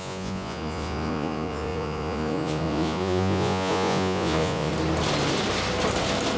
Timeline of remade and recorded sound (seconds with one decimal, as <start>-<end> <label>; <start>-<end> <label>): 0.0-4.7 remade; 4.7-6.4 recorded